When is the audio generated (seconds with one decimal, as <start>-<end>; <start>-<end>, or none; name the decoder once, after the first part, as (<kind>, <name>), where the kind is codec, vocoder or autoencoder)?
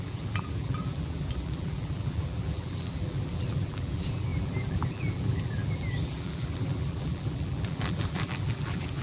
0.0-9.0 (vocoder, BigVGAN v2)